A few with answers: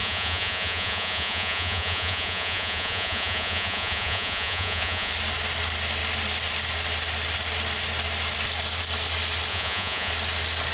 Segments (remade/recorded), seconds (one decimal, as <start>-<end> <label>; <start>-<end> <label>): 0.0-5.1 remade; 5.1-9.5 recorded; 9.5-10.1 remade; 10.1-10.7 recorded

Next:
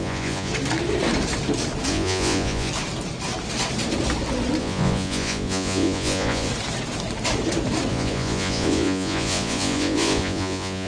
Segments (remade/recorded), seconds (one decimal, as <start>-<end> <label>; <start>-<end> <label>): 0.0-0.5 remade; 0.5-1.9 recorded; 1.9-2.7 remade; 2.7-4.6 recorded; 4.6-6.5 remade; 6.5-7.9 recorded; 7.9-10.9 remade

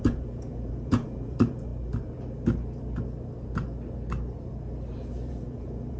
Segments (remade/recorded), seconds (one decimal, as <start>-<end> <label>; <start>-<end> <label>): 0.0-1.7 remade; 1.7-5.3 recorded; 5.3-6.0 remade